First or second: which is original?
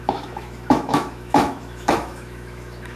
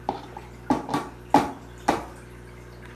second